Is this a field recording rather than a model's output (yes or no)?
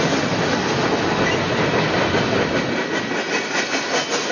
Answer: yes